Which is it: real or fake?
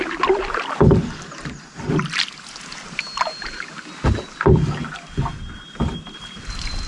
real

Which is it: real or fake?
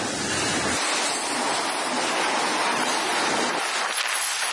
real